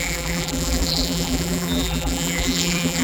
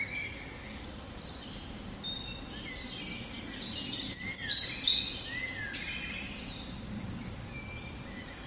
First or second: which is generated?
first